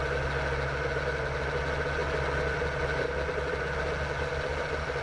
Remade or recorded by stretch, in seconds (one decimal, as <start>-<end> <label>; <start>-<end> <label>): 0.0-5.0 recorded